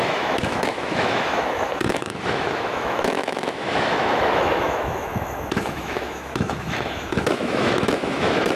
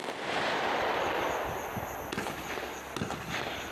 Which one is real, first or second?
second